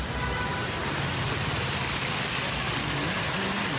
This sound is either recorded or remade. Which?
recorded